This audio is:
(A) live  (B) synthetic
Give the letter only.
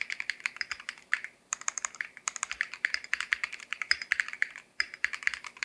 B